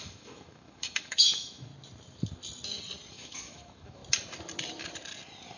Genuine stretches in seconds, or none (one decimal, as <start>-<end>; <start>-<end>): 1.7-3.1; 4.0-5.6

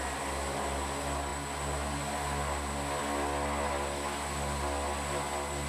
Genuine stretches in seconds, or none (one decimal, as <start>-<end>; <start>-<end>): 0.0-5.7

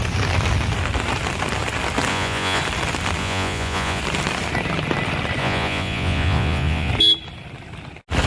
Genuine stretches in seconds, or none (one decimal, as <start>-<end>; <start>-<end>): 0.0-2.1; 2.6-3.2; 4.0-5.4; 6.9-8.3

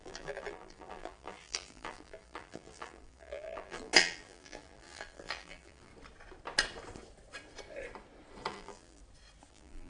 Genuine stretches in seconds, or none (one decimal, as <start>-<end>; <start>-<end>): 5.9-8.5; 9.0-9.5

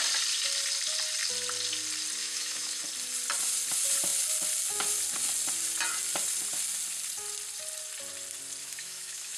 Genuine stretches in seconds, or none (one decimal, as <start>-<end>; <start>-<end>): 0.0-2.2; 2.8-8.6

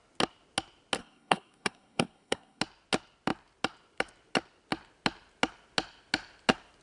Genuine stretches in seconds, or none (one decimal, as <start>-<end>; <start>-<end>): 0.0-1.0; 2.6-6.8

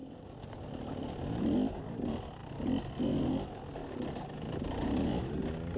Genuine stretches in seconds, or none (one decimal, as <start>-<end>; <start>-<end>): 0.0-5.8